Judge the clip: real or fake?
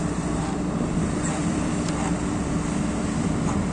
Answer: fake